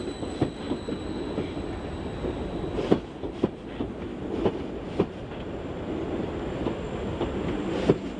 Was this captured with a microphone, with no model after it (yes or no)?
yes